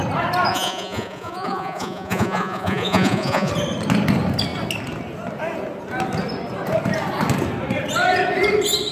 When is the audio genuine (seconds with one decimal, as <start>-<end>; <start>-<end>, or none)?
0.0-0.5; 3.5-8.9